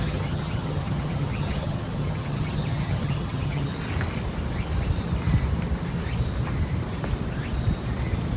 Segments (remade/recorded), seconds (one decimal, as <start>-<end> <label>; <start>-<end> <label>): 0.0-3.7 remade; 3.7-8.4 recorded